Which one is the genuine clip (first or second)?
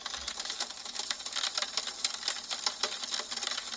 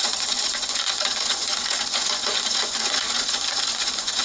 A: first